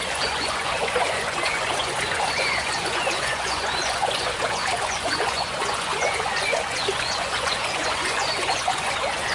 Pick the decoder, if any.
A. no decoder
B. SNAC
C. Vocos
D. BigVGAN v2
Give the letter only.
C